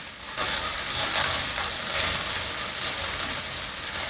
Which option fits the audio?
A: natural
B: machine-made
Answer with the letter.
A